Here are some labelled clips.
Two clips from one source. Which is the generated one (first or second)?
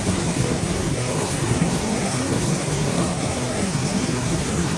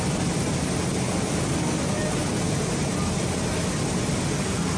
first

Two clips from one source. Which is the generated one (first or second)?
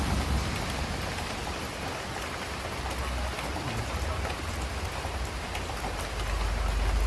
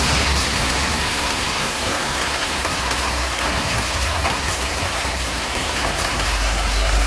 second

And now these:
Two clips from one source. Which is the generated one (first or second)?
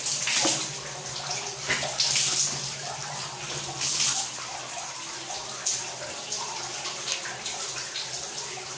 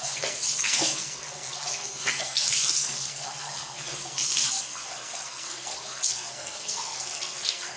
second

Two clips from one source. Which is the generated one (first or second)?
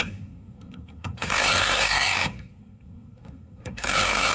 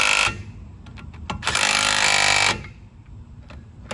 first